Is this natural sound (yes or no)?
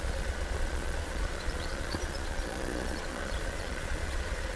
no